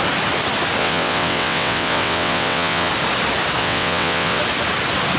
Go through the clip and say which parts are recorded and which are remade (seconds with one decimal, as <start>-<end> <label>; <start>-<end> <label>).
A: 0.0-0.8 recorded; 0.8-2.9 remade; 2.9-3.6 recorded; 3.6-4.4 remade; 4.4-5.2 recorded